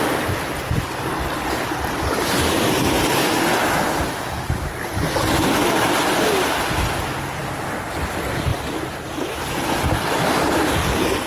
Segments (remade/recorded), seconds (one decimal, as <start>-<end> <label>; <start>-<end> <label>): 0.0-11.3 recorded